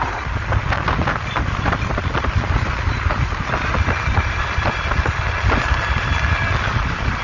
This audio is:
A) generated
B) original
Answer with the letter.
B